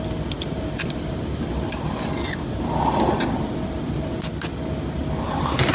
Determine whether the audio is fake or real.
real